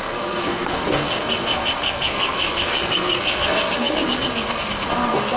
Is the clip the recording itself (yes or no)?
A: no